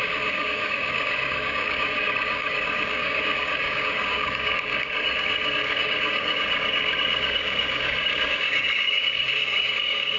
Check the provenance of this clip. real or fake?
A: fake